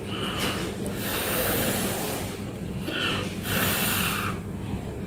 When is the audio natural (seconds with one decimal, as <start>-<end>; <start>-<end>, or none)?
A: 0.0-5.1